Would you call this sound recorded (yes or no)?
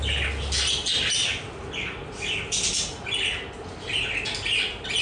yes